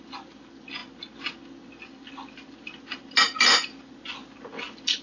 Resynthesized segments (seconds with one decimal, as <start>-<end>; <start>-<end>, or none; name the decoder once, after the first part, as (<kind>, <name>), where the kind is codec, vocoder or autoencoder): none